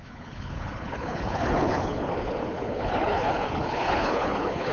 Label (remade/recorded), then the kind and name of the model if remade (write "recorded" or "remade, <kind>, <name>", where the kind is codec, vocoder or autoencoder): remade, codec, HILCodec